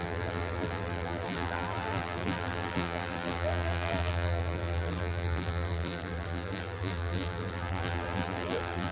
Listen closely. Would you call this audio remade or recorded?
remade